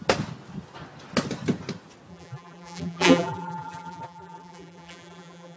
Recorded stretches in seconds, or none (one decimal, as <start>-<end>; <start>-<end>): 0.0-2.1